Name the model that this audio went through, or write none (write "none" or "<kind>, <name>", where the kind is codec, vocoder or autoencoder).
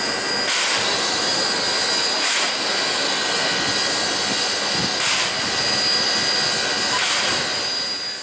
none